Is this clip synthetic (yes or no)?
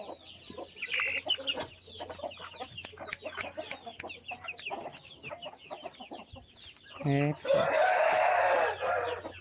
no